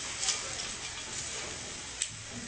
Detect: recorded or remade recorded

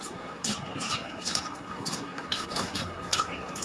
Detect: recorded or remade remade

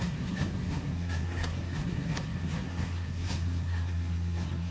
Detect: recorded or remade remade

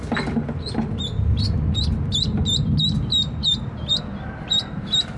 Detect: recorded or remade recorded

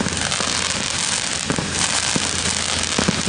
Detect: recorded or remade recorded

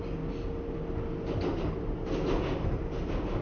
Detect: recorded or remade recorded